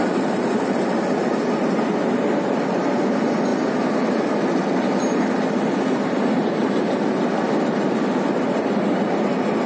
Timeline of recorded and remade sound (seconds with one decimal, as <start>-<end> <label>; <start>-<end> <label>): 0.0-9.7 recorded